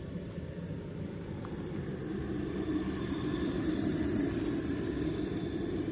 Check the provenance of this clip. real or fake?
fake